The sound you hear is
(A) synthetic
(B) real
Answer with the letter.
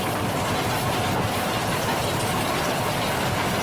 A